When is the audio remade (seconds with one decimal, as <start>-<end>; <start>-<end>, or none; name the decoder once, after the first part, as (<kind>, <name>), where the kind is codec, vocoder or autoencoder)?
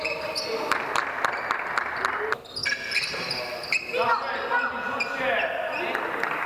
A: none